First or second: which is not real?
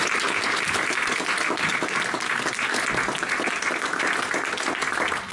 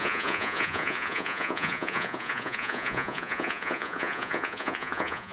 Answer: second